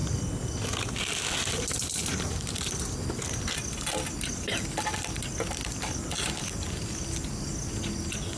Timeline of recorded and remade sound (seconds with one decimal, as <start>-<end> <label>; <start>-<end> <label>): 0.0-8.4 recorded